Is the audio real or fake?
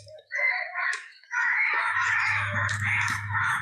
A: fake